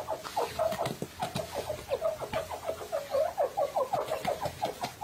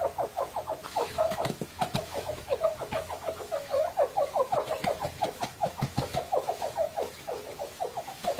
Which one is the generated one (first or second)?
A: second